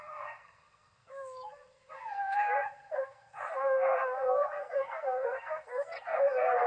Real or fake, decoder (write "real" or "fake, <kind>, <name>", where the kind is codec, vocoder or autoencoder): fake, codec, SNAC